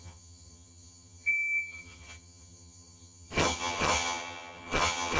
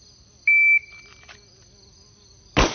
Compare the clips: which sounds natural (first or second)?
second